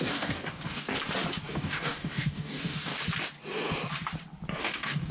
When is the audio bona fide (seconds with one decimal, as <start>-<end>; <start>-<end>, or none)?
0.9-1.5; 2.9-4.6